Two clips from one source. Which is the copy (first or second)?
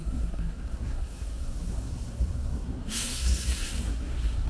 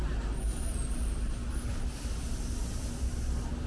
first